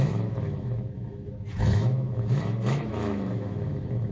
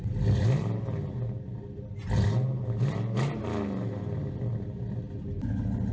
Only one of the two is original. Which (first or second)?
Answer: second